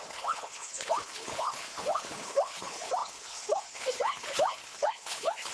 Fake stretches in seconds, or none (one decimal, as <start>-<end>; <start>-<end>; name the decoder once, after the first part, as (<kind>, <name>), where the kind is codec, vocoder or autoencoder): 0.0-5.5 (codec, HILCodec)